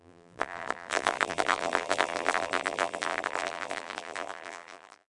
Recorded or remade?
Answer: remade